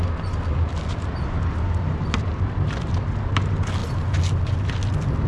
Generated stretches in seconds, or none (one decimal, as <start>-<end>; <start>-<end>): none